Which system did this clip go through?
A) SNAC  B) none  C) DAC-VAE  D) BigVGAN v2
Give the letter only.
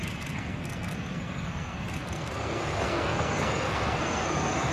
A